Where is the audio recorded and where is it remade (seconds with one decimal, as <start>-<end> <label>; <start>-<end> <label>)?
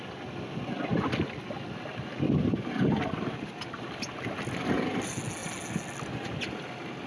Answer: 0.0-7.1 recorded